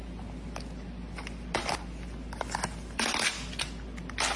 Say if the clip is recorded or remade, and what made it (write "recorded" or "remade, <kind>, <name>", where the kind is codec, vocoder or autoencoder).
recorded